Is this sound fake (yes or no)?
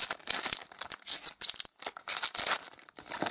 no